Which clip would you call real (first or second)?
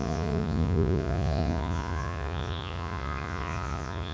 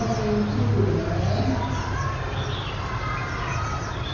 second